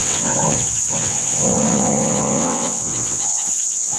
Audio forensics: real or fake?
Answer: fake